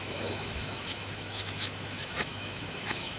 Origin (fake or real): fake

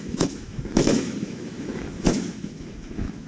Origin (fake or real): fake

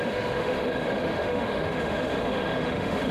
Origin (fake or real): fake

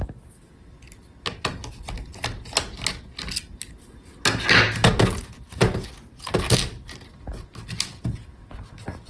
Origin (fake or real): real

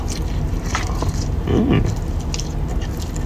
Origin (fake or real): real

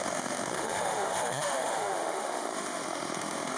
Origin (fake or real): fake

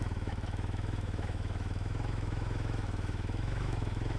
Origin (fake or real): fake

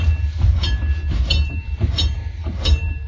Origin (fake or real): real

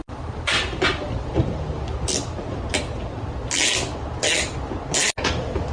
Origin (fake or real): real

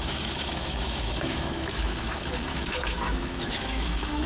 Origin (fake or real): fake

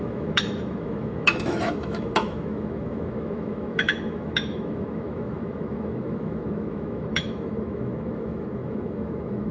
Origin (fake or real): fake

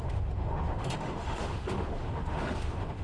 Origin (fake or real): fake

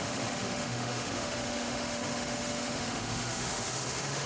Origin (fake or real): fake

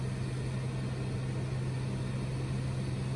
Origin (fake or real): real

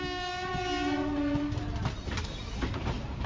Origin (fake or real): real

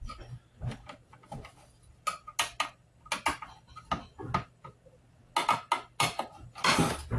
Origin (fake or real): real